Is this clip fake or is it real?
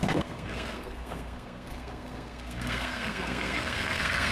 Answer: fake